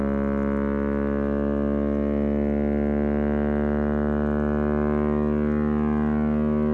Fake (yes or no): no